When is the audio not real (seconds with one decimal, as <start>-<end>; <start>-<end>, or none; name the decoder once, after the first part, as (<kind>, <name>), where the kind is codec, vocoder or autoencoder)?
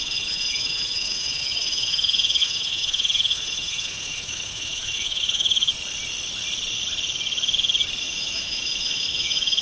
0.0-5.7 (autoencoder, DAC-VAE); 8.0-9.6